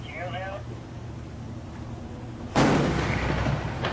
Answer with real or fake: real